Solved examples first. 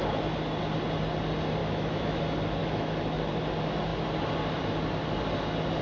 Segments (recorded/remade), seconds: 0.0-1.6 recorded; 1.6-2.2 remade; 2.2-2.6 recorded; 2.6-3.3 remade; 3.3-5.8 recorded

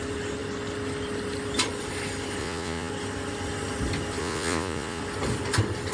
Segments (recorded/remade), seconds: 0.0-2.4 recorded; 2.4-2.9 remade; 2.9-4.2 recorded; 4.2-5.0 remade; 5.0-5.9 recorded

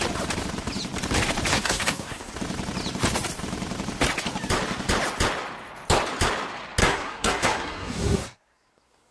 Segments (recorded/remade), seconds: 0.0-1.5 recorded; 1.5-2.3 remade; 2.3-6.8 recorded; 6.8-9.1 remade

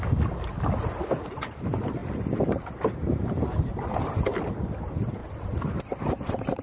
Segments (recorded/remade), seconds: 0.0-6.6 recorded